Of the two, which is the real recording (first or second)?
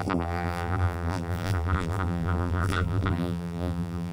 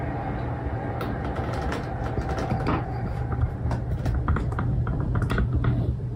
second